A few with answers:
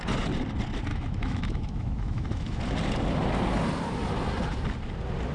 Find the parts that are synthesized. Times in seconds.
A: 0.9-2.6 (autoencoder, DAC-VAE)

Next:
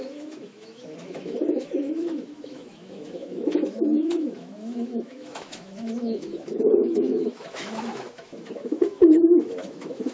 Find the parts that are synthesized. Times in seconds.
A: 0.0-10.1 (autoencoder, DAC-VAE)

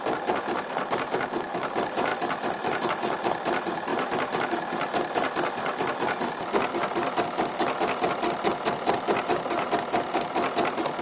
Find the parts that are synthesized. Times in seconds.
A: none

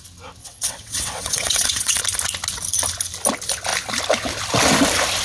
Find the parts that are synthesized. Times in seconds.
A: 0.4-2.0 (vocoder, WaveNeXt)

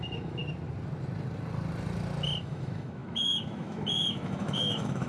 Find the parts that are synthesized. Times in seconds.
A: 0.0-0.4 (autoencoder, DAC-VAE); 2.4-5.1

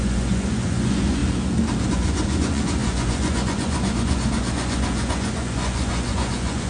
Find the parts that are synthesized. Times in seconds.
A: 0.0-1.2 (vocoder, Vocos); 1.9-6.7